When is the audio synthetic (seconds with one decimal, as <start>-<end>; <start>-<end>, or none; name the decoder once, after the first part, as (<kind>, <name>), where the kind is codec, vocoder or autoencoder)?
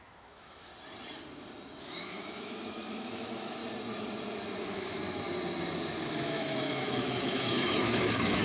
0.0-0.7 (autoencoder, DAC-VAE); 1.8-3.6; 4.6-5.0; 6.1-8.4